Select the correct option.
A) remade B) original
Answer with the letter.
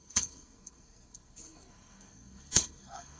A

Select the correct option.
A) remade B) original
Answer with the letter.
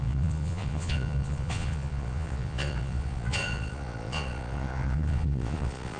A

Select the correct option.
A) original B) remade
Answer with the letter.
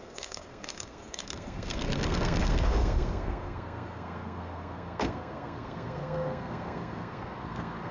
B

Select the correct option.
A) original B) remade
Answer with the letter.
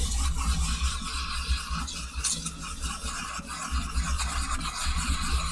A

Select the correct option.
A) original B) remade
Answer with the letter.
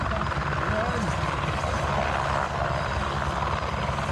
A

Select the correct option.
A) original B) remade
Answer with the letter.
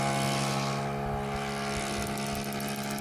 A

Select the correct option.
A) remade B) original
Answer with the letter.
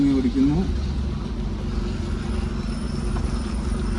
B